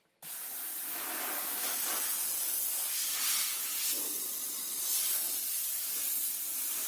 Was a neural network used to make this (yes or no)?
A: no